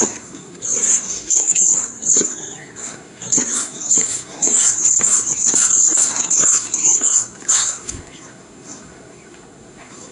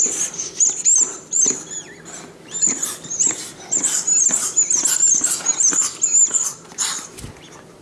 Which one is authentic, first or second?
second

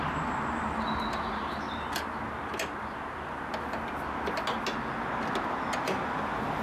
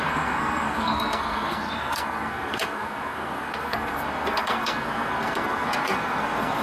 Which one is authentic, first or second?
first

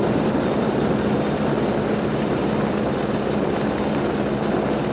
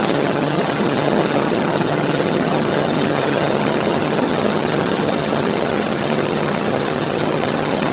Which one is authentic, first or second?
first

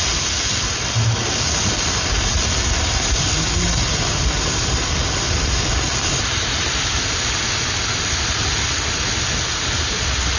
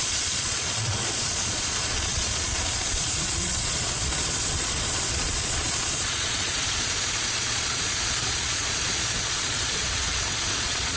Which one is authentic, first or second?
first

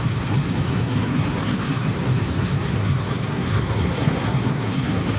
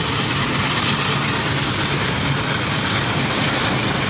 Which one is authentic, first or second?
second